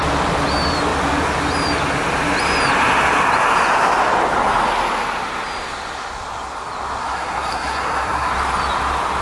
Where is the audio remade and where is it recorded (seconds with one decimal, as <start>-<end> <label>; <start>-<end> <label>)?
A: 0.0-7.0 recorded; 7.0-8.3 remade; 8.3-9.2 recorded